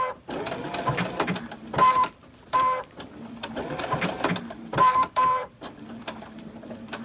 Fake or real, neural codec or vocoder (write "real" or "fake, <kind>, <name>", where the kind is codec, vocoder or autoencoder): fake, vocoder, BigVGAN v2